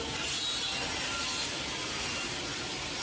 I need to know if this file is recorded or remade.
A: recorded